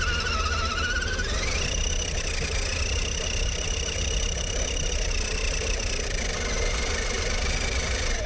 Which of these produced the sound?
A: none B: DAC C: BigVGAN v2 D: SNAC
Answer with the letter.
A